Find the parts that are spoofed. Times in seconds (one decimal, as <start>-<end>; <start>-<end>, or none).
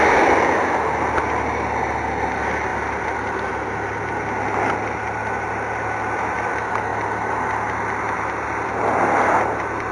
none